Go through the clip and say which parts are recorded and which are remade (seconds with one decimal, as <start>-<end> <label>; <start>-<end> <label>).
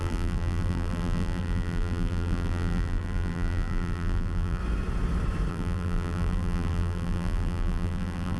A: 0.0-4.6 remade; 4.6-5.5 recorded; 5.5-8.4 remade